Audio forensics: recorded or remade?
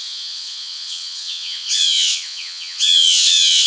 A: remade